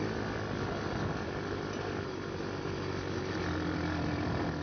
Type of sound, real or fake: real